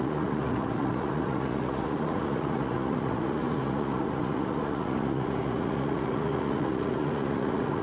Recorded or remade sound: remade